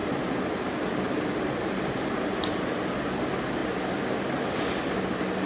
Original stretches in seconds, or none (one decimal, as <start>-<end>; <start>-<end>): 0.0-5.5